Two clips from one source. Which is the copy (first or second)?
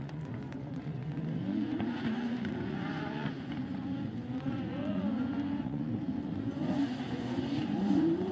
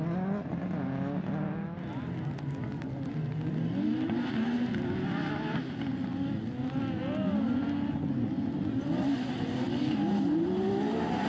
first